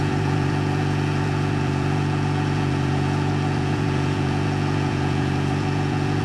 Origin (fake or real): fake